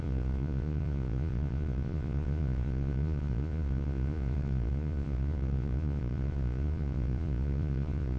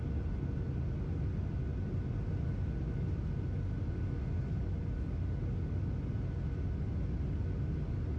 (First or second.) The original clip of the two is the second